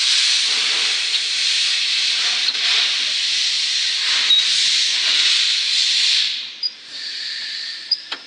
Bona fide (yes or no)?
yes